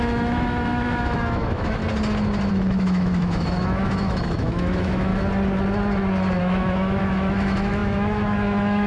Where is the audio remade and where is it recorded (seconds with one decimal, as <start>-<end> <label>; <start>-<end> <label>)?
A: 0.0-1.8 remade; 1.8-2.5 recorded; 2.5-5.1 remade; 5.1-6.4 recorded; 6.4-8.9 remade